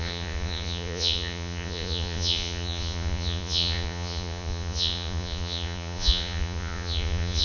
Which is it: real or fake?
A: fake